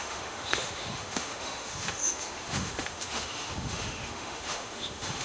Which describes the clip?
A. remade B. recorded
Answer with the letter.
A